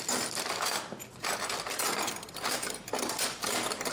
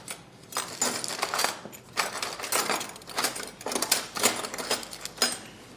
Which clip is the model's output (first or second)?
first